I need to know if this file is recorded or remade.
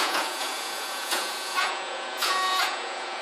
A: remade